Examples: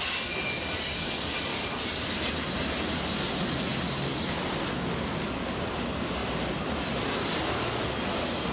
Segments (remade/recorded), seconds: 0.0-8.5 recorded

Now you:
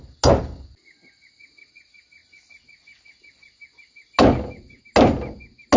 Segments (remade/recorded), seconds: 0.0-5.8 recorded

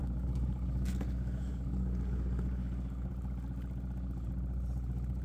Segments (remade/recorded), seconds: 0.0-3.1 remade; 3.1-5.2 recorded

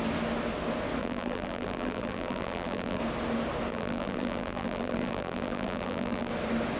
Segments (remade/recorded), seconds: 0.0-1.0 recorded; 1.0-3.0 remade; 3.0-3.7 recorded; 3.7-6.3 remade; 6.3-6.8 recorded

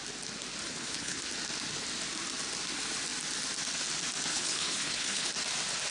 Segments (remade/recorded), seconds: 0.0-0.6 recorded; 0.6-1.2 remade; 1.2-4.3 recorded; 4.3-5.3 remade; 5.3-5.9 recorded

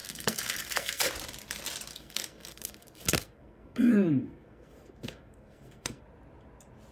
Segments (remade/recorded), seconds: 0.0-1.1 remade; 1.1-1.9 recorded; 1.9-6.0 remade; 6.0-6.9 recorded

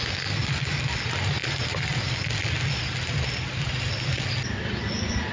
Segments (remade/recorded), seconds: 0.0-1.4 recorded; 1.4-2.6 remade; 2.6-5.3 recorded

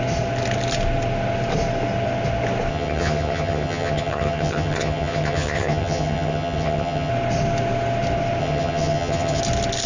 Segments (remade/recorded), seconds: 0.0-2.7 recorded; 2.7-7.1 remade; 7.1-8.4 recorded; 8.4-9.4 remade; 9.4-9.9 recorded